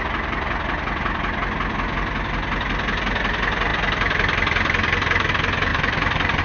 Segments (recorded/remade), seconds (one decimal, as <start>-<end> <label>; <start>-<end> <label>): 0.0-5.7 recorded; 5.7-6.4 remade